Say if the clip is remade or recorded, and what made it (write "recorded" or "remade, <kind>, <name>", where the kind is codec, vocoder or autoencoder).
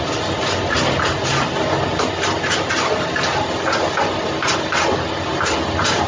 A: recorded